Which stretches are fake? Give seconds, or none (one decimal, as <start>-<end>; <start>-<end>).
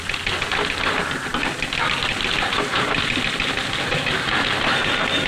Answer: none